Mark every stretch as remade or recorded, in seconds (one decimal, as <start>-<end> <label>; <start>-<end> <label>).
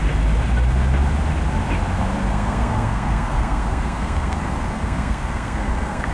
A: 0.0-2.3 recorded; 2.3-6.1 remade